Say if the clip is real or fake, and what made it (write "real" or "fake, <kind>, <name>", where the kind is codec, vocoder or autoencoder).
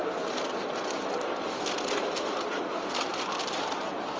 real